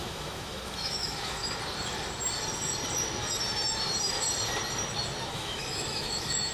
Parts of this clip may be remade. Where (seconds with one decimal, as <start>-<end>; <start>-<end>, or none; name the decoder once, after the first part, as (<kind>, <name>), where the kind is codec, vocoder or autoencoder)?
0.0-1.4 (autoencoder, DAC-VAE); 5.3-6.5